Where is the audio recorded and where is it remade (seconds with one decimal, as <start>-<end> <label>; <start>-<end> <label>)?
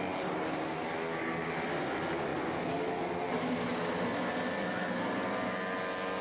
0.0-6.2 recorded